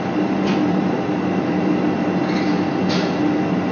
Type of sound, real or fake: real